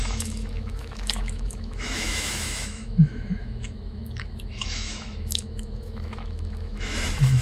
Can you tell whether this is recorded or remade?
remade